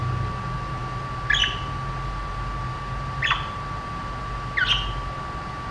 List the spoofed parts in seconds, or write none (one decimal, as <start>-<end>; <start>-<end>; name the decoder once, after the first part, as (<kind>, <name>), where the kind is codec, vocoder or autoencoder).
none